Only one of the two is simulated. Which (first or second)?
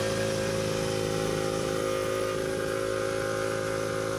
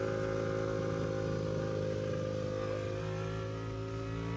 first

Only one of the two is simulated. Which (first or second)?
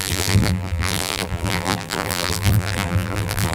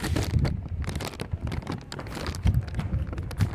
first